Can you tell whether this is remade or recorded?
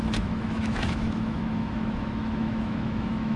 remade